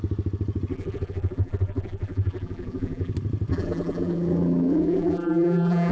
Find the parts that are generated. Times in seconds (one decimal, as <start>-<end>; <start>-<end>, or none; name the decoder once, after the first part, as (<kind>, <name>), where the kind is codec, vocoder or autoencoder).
0.7-3.1 (vocoder, BigVGAN v2); 3.5-5.9